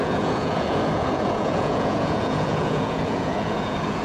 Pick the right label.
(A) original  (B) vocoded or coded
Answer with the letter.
B